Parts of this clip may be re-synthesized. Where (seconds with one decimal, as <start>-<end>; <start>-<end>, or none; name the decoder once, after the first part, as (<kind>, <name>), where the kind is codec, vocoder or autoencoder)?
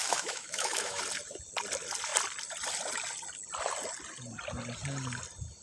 0.0-1.0 (autoencoder, DAC-VAE)